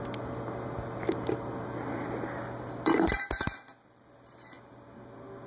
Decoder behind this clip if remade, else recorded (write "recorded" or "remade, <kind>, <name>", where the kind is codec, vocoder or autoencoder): recorded